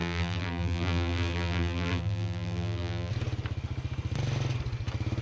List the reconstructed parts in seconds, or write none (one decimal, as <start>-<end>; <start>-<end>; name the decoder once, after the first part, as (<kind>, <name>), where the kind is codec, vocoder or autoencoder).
0.0-3.1 (vocoder, BigVGAN v2)